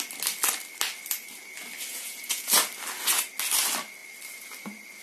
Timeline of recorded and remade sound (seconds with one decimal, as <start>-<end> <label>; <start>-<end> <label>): 0.0-1.9 recorded; 1.9-2.5 remade; 2.5-5.0 recorded